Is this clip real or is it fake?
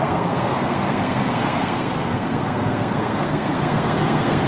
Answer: fake